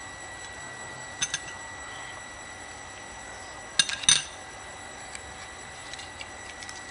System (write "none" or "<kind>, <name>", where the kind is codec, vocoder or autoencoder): none